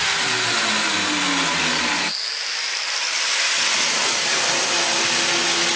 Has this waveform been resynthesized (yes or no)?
no